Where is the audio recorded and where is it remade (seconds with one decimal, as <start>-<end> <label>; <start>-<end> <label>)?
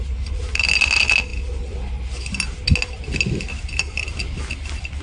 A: 0.0-5.0 recorded